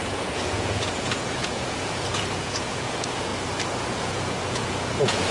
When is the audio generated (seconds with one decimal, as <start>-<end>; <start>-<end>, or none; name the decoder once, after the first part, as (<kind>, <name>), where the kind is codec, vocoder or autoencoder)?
0.0-3.3 (vocoder, Vocos); 4.0-5.3